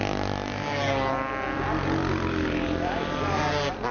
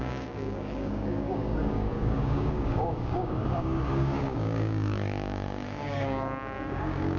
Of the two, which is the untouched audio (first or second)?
first